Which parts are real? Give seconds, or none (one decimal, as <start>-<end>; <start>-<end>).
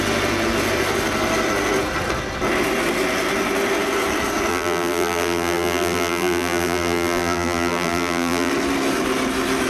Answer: 0.0-4.5; 8.5-9.7